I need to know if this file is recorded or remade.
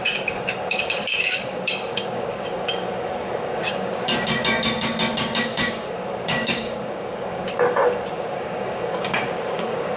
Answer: remade